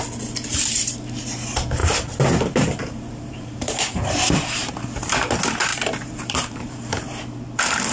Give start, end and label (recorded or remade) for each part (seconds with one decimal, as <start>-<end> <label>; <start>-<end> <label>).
0.0-1.8 recorded; 1.8-4.8 remade; 4.8-5.7 recorded; 5.7-7.2 remade; 7.2-7.9 recorded